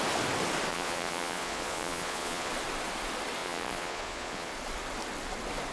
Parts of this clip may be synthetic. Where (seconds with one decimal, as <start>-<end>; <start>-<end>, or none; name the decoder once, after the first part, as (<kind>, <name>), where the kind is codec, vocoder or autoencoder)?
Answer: 0.7-2.5 (vocoder, Vocos); 3.4-4.5